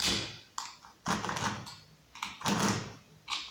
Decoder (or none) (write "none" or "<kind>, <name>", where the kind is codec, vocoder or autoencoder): none